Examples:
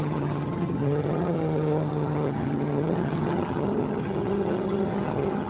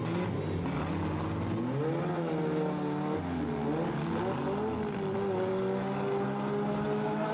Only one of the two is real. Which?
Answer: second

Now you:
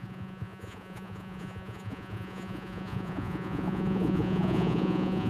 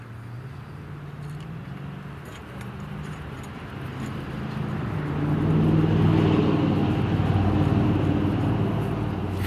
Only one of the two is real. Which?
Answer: second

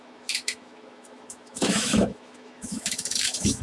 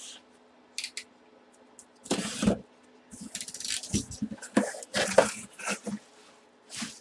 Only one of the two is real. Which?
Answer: second